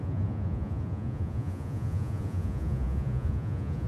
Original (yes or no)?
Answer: no